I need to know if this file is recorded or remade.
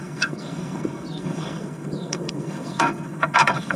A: remade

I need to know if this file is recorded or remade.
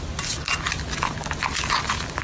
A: recorded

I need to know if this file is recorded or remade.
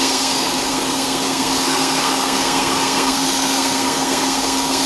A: remade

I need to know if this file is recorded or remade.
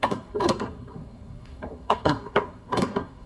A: remade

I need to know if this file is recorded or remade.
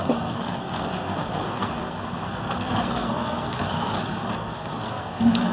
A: remade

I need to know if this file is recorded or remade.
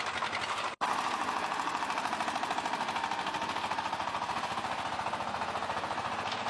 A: recorded